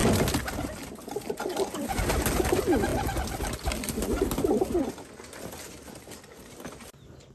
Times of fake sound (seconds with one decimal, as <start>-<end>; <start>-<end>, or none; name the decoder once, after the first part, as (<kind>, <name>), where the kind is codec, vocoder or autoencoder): none